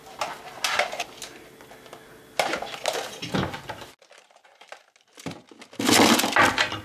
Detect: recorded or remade recorded